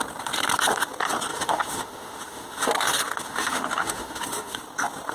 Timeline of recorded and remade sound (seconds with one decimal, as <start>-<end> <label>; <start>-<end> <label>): 0.0-1.3 recorded; 1.3-2.7 remade; 2.7-3.2 recorded; 3.2-4.6 remade; 4.6-5.1 recorded